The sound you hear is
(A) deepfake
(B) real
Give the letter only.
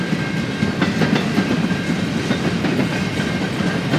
B